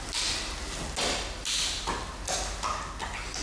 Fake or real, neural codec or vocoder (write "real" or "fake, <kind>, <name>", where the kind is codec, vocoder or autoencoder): real